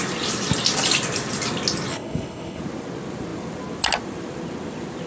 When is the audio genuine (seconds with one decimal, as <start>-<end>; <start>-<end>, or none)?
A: 0.0-1.9; 2.6-5.1